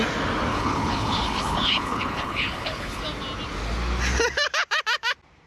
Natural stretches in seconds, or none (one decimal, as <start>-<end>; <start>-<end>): 0.0-0.5; 3.0-5.5